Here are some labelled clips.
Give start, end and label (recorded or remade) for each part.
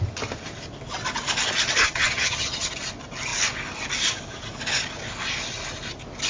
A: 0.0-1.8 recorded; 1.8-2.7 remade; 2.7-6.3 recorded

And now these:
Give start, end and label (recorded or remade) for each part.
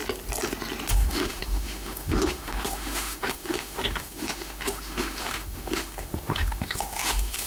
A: 0.0-0.9 recorded; 0.9-7.5 remade